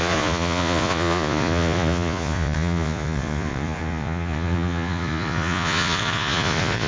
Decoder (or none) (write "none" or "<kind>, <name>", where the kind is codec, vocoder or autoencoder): vocoder, Vocos